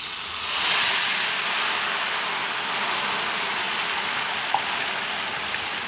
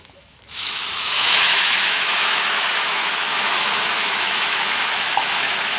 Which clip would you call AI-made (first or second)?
second